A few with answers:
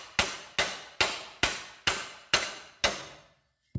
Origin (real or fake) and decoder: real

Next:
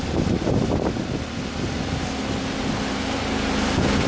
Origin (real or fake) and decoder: real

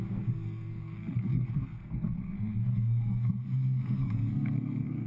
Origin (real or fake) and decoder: fake, codec, SNAC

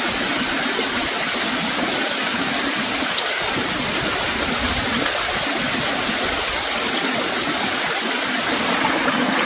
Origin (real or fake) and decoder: real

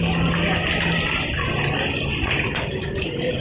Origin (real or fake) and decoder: real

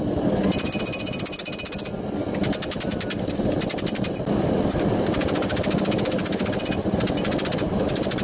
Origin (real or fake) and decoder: real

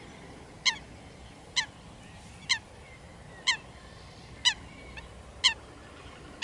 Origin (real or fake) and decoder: real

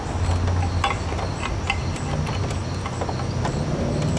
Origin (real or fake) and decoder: real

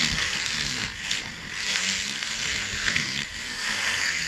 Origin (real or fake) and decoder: fake, codec, SNAC